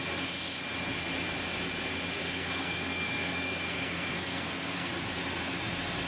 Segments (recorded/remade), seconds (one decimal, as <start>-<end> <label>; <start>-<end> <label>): 0.0-2.2 recorded; 2.2-4.9 remade; 4.9-6.1 recorded